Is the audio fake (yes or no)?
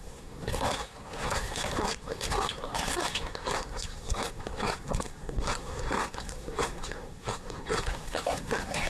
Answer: yes